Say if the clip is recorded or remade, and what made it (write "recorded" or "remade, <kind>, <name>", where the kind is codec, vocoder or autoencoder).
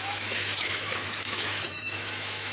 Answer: remade, autoencoder, DAC-VAE